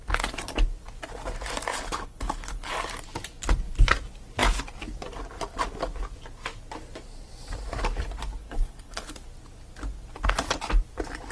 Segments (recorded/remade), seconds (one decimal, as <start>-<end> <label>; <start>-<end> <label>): 0.0-1.7 recorded; 1.7-2.7 remade; 2.7-8.4 recorded; 8.4-9.1 remade; 9.1-11.3 recorded